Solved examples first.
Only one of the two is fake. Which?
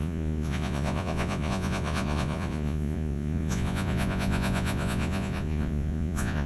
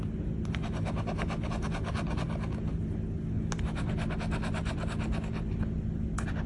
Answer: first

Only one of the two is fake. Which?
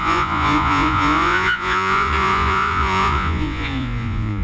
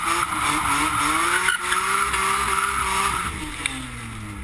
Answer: first